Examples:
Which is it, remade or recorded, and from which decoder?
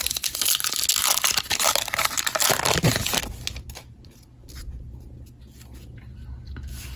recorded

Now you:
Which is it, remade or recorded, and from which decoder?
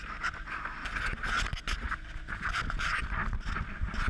recorded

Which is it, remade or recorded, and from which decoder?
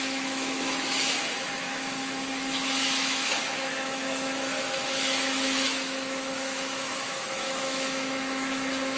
remade, autoencoder, DAC-VAE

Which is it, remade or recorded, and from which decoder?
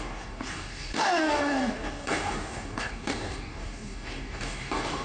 remade, codec, DAC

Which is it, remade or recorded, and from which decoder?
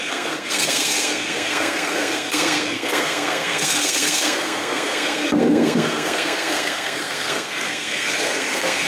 remade, codec, SNAC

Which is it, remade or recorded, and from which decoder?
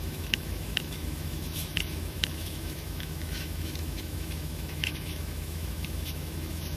remade, autoencoder, DAC-VAE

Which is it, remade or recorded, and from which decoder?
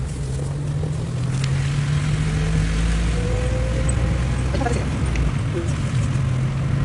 recorded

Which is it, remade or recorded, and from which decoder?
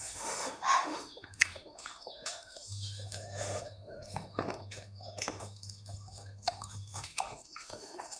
remade, autoencoder, DAC-VAE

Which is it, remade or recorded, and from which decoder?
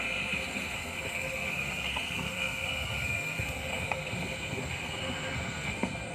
remade, codec, SNAC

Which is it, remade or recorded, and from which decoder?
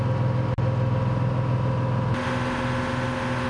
recorded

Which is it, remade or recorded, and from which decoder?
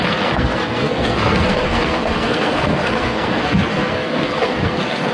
remade, codec, SNAC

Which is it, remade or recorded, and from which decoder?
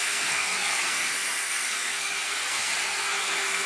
remade, codec, SNAC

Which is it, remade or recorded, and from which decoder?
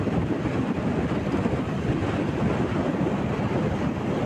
recorded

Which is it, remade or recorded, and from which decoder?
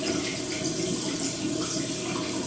recorded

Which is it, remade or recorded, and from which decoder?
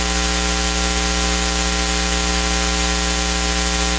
recorded